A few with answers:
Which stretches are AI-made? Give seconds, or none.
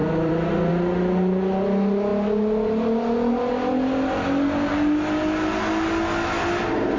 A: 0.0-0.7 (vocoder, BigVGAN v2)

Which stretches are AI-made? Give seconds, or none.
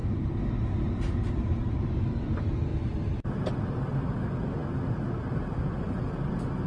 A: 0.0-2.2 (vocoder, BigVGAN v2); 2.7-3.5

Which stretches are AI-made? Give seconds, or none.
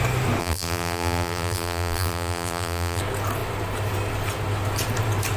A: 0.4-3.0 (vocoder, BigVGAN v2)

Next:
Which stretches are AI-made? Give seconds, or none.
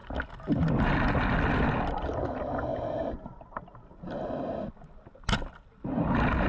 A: 2.7-3.6 (vocoder, BigVGAN v2)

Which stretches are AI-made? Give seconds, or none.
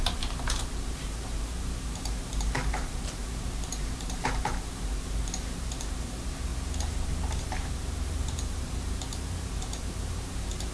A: 0.0-6.5 (vocoder, BigVGAN v2); 7.4-10.7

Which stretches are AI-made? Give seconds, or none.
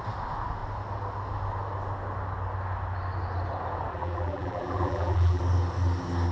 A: 3.9-5.4 (vocoder, BigVGAN v2)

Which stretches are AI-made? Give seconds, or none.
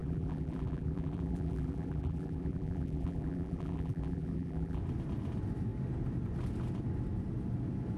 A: 0.0-4.8 (vocoder, BigVGAN v2)